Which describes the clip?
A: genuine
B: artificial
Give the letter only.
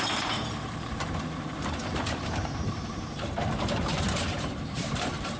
B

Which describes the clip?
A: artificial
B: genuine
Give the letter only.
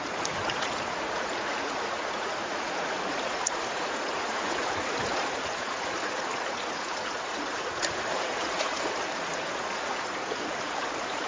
A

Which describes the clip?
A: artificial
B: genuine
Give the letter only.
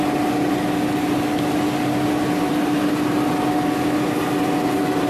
B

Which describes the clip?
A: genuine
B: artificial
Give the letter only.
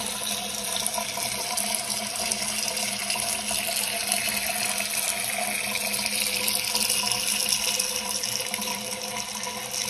A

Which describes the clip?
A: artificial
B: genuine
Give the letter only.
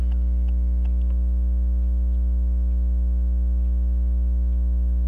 B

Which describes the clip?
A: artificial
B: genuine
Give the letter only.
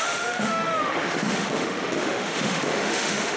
A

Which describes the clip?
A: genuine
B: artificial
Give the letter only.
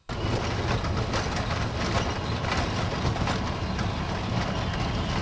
A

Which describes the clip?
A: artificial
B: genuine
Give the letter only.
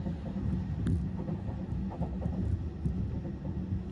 B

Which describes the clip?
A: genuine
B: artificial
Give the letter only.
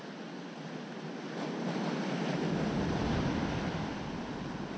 A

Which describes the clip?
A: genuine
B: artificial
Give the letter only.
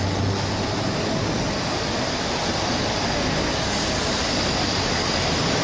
A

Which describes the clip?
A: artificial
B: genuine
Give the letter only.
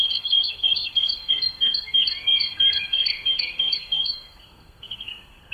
A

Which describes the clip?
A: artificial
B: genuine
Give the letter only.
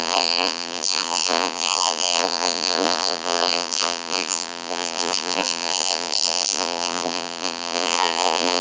A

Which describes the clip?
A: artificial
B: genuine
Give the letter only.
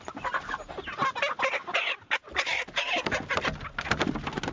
B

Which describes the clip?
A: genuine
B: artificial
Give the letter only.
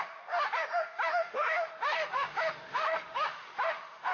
B